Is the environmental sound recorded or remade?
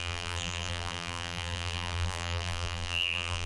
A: remade